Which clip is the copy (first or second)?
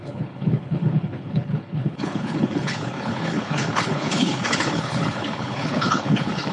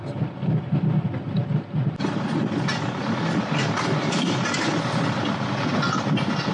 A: first